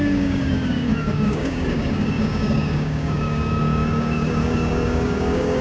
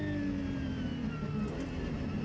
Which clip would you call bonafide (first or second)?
second